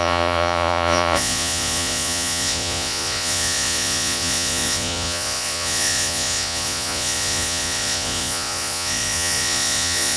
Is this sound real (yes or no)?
no